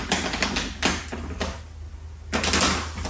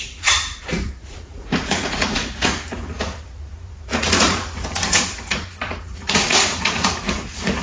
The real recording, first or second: first